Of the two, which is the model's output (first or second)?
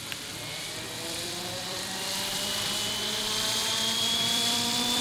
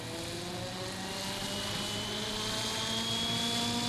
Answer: first